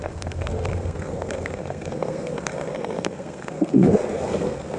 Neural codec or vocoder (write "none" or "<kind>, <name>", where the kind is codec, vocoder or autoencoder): codec, SNAC